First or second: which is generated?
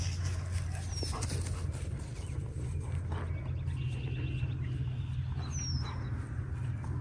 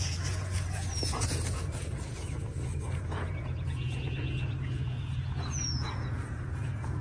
second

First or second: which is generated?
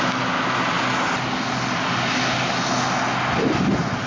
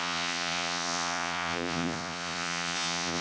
second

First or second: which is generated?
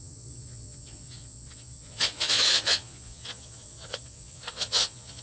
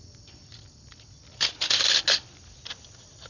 first